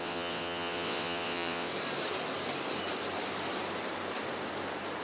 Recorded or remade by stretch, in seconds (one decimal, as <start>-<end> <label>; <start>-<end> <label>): 0.0-1.7 remade; 1.7-5.0 recorded